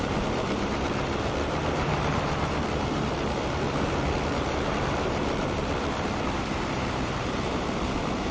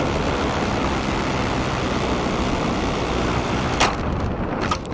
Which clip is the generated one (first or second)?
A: first